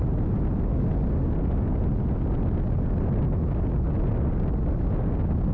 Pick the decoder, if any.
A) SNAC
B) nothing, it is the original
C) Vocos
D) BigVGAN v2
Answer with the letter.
B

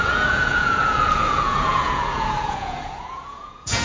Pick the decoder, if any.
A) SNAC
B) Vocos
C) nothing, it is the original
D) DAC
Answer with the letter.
B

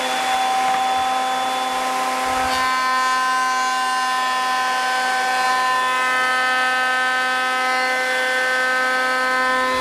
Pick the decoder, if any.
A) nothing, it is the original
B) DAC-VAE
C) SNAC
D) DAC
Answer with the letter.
A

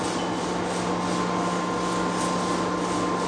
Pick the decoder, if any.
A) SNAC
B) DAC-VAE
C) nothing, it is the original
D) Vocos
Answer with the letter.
C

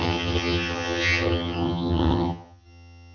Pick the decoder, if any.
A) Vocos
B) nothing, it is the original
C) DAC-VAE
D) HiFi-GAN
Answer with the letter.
D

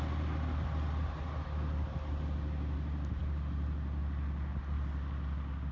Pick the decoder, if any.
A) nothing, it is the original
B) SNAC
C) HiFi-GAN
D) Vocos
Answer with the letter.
A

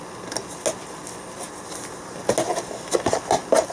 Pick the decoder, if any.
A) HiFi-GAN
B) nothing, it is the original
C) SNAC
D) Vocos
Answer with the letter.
B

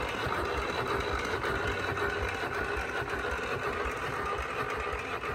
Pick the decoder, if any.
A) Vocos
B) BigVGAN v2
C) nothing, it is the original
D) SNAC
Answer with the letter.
C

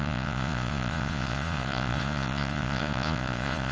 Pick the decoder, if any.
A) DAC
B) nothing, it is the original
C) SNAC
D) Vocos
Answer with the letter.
D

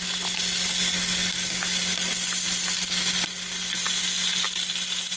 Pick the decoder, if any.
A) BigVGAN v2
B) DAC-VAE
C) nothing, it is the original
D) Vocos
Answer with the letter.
C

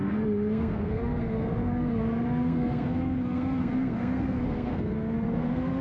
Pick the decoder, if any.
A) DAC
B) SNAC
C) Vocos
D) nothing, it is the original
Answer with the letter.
B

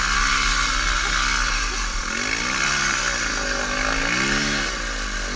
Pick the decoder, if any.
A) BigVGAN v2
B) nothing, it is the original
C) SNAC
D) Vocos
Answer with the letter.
B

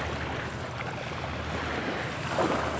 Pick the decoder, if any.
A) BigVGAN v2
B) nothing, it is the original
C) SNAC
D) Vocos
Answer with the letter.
B